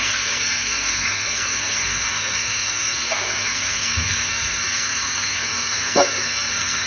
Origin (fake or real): fake